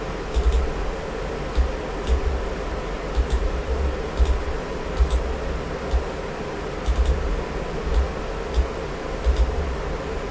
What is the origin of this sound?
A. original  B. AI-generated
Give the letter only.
A